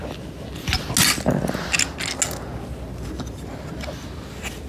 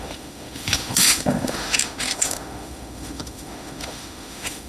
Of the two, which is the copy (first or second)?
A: second